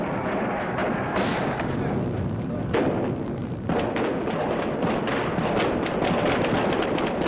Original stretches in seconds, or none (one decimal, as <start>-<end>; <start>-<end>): 0.0-7.3